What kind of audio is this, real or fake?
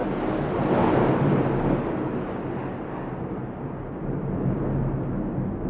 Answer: real